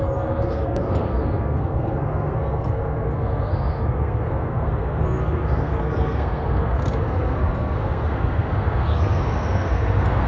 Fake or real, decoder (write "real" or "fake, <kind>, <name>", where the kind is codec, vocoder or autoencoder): fake, codec, SNAC